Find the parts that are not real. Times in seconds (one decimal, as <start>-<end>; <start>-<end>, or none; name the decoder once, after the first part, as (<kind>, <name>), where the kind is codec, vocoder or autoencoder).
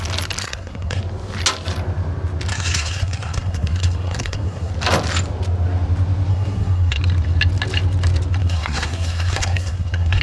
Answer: 0.4-1.0 (codec, SNAC); 2.5-4.7; 6.3-7.0; 8.4-10.2